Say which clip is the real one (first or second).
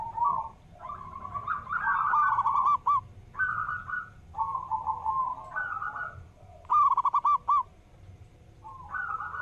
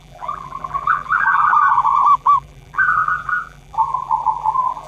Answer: first